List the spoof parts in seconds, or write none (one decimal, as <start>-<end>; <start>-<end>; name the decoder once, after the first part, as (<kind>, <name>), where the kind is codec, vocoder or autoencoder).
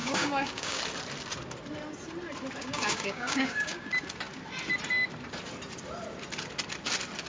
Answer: 0.0-0.8 (codec, DAC); 2.6-3.9